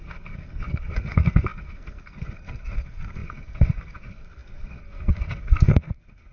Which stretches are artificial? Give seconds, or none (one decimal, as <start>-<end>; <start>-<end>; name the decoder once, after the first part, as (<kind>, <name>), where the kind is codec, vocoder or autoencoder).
0.0-6.3 (codec, SNAC)